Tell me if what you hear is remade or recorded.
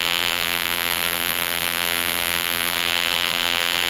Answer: remade